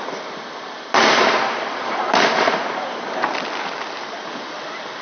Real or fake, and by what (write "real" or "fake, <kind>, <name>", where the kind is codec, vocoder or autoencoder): real